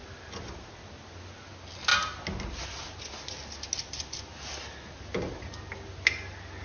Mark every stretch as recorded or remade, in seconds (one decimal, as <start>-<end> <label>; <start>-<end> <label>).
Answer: 0.0-6.6 recorded